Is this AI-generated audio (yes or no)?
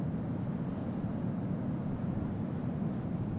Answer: no